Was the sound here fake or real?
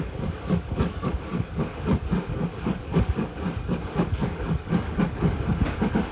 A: fake